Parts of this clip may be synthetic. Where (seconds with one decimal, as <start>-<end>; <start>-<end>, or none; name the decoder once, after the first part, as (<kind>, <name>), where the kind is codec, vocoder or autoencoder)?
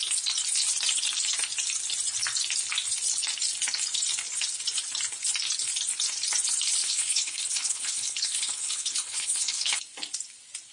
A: 6.8-9.8 (codec, HILCodec)